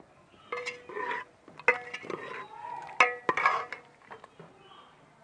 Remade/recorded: recorded